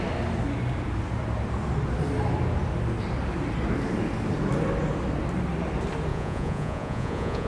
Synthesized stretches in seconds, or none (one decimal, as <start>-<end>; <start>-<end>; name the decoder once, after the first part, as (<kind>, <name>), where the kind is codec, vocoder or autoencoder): 6.1-7.5 (vocoder, Vocos)